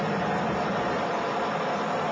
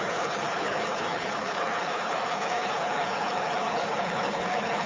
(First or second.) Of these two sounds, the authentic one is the first